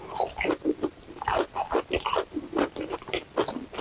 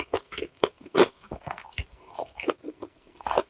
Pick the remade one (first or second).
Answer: second